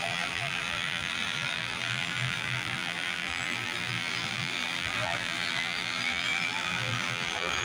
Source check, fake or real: fake